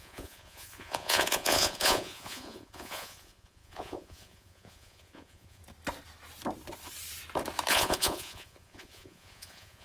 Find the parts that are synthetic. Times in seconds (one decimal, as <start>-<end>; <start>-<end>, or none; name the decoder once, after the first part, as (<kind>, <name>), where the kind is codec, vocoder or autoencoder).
0.0-5.6 (vocoder, Vocos); 7.7-9.8